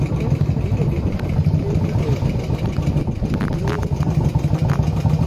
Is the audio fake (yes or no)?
no